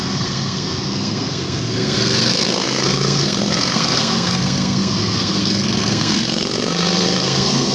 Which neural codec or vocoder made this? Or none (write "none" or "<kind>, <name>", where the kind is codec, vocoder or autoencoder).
codec, SNAC